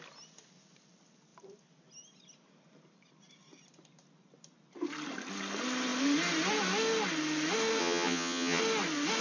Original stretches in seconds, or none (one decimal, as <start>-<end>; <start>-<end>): 0.0-7.8; 8.6-9.2